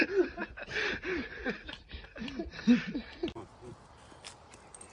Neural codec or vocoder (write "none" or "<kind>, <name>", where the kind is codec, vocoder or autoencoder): vocoder, BigVGAN v2